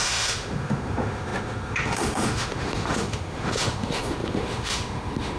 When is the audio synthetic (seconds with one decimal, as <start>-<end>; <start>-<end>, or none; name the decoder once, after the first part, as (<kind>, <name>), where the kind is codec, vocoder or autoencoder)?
0.0-5.4 (autoencoder, DAC-VAE)